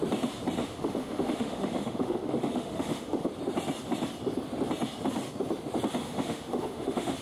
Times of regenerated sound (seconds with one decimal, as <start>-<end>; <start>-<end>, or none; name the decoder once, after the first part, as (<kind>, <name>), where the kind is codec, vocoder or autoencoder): 0.6-3.3 (autoencoder, DAC-VAE); 6.0-7.2